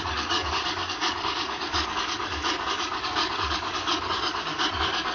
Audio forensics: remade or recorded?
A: remade